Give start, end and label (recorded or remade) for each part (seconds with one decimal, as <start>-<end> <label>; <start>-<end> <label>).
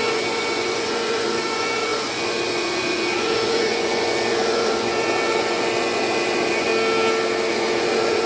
0.0-6.7 remade; 6.7-7.5 recorded; 7.5-8.3 remade